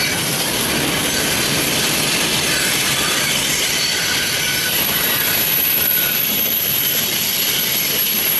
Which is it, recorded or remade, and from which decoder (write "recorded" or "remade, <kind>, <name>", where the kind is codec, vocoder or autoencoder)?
remade, vocoder, BigVGAN v2